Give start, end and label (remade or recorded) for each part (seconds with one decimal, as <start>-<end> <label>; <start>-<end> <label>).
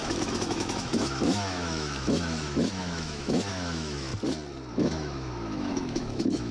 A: 0.0-4.1 remade; 4.1-4.7 recorded; 4.7-6.5 remade